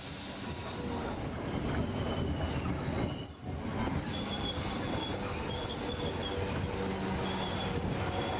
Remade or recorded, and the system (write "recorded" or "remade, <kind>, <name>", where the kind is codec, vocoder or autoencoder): recorded